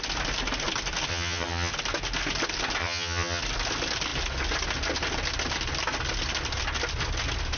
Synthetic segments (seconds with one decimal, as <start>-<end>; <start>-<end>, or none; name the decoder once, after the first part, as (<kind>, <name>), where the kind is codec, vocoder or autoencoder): 1.1-1.7 (vocoder, HiFi-GAN); 2.8-3.4